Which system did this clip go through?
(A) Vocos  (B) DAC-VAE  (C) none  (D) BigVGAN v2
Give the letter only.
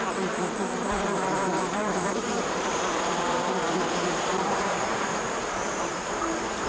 D